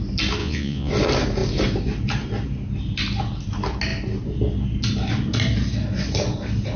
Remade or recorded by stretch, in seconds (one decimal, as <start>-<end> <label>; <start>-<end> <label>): 0.0-0.4 recorded; 0.4-0.9 remade; 0.9-6.8 recorded